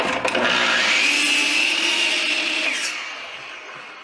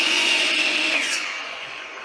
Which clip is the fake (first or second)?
second